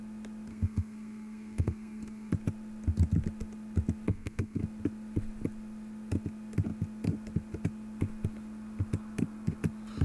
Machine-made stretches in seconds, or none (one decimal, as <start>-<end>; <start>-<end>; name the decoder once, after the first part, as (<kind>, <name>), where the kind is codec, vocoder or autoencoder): 0.5-2.3 (codec, SNAC); 4.1-4.6